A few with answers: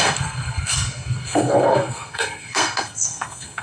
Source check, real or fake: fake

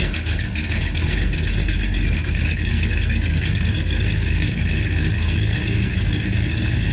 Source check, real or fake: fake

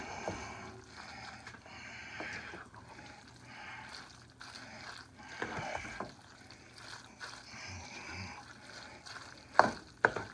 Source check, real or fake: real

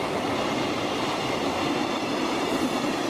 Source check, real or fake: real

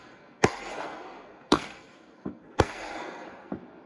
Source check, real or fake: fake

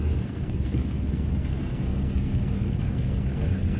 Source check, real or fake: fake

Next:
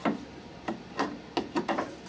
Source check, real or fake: real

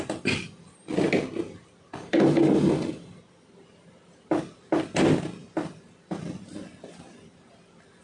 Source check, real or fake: real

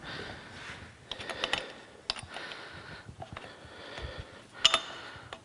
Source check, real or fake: real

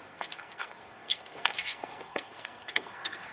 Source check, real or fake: fake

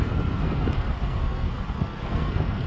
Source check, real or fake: fake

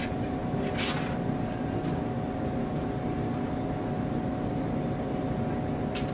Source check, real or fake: real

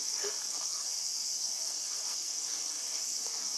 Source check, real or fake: fake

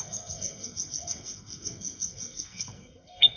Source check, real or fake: fake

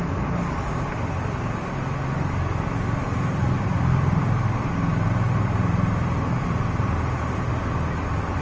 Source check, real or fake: real